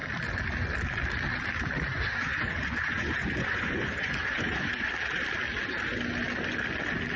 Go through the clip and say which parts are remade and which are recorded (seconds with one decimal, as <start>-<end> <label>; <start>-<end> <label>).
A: 0.0-1.9 recorded; 1.9-4.9 remade; 4.9-7.2 recorded